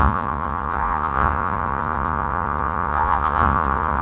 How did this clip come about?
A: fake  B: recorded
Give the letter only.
A